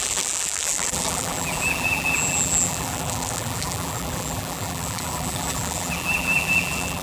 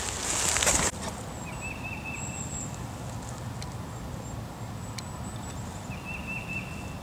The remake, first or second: first